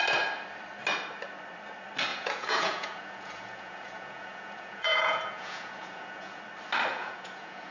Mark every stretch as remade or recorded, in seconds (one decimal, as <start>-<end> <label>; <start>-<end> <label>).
0.0-2.1 recorded; 2.1-6.4 remade; 6.4-6.9 recorded; 6.9-7.7 remade